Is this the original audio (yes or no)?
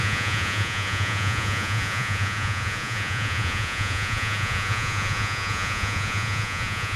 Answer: no